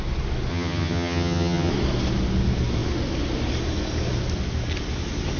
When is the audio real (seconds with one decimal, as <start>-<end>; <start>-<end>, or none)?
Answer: 0.0-0.5; 1.7-5.4